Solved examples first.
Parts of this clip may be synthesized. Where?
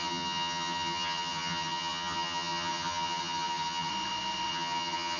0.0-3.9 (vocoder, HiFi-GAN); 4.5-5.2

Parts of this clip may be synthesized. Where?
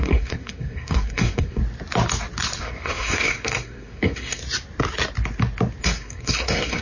0.0-1.6 (codec, SNAC); 2.6-4.4; 5.8-6.8